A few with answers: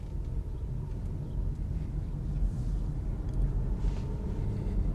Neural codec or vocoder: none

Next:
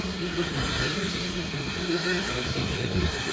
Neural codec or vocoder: codec, SNAC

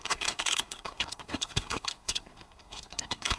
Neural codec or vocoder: codec, SNAC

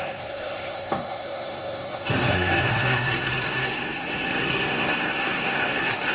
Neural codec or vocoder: codec, SNAC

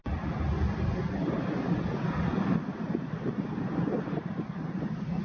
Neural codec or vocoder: none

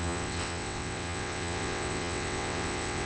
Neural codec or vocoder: vocoder, WaveNeXt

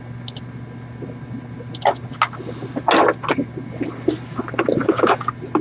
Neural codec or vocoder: none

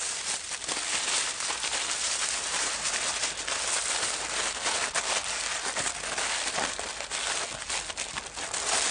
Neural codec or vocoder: none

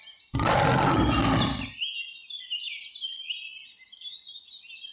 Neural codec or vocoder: none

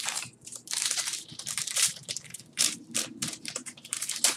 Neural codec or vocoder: vocoder, BigVGAN v2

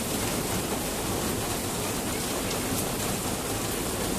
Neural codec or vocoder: none